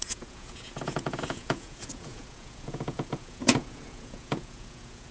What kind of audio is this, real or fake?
fake